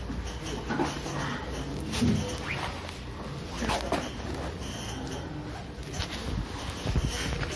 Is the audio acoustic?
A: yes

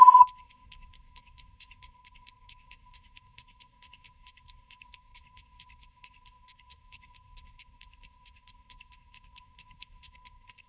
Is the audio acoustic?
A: no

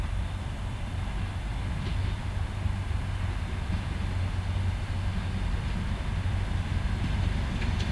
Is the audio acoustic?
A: yes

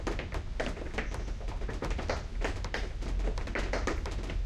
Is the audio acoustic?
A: yes